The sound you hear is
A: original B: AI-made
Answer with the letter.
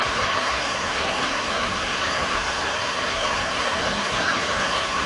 B